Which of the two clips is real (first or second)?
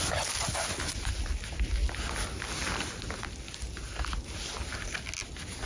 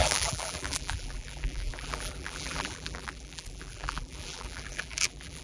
first